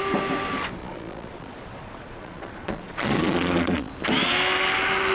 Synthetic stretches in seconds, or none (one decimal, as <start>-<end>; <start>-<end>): 0.8-3.9